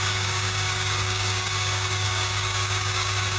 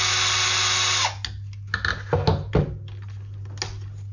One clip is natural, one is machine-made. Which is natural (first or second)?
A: second